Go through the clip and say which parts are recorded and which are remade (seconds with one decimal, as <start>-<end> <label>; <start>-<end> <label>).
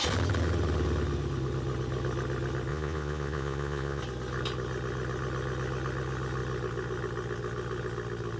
0.0-2.7 recorded; 2.7-4.0 remade; 4.0-8.4 recorded